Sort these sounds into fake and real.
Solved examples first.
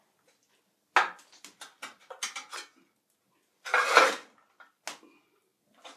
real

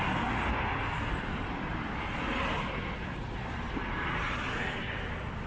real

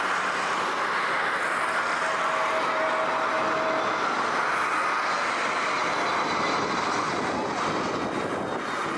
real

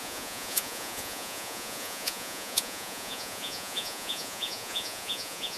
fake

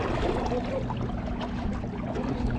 real